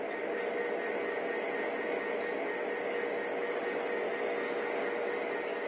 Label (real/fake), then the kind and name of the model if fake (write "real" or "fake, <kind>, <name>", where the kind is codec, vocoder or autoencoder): real